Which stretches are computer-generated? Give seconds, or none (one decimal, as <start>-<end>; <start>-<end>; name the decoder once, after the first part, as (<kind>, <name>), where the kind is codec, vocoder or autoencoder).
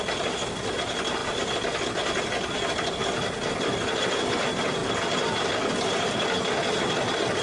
none